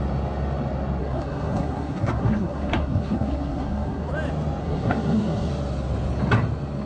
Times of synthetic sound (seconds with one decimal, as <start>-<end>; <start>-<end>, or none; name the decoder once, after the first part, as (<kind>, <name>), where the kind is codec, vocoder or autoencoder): 1.0-4.1 (codec, SNAC); 4.6-5.5